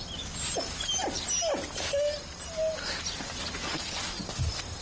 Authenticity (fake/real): real